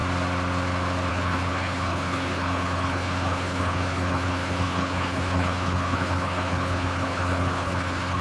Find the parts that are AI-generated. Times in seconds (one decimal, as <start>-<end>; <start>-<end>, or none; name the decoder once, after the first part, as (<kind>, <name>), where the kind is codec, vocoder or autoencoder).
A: 1.1-8.2 (codec, HILCodec)